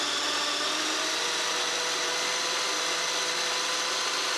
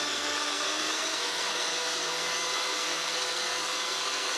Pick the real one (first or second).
first